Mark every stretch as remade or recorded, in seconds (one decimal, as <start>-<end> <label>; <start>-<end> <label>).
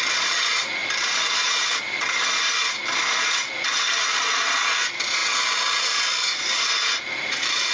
0.0-7.7 recorded